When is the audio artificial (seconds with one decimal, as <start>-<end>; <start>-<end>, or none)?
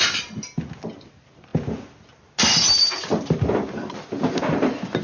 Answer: none